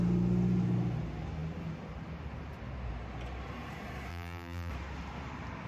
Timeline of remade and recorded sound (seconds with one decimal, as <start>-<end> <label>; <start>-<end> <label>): 0.0-4.1 recorded; 4.1-4.7 remade; 4.7-5.7 recorded